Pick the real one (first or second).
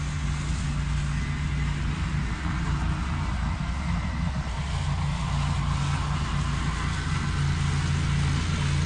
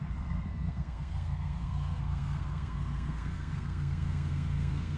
first